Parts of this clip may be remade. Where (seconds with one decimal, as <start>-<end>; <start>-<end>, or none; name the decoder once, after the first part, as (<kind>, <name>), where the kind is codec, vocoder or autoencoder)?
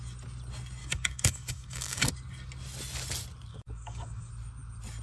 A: 0.8-2.1 (codec, DAC); 3.5-4.3